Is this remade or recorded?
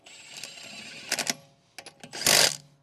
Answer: recorded